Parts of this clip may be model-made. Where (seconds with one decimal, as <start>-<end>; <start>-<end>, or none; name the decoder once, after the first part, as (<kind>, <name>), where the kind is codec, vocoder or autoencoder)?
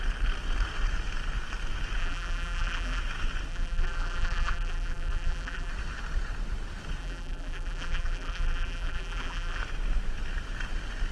2.0-3.0 (vocoder, BigVGAN v2); 3.5-5.7; 7.0-9.6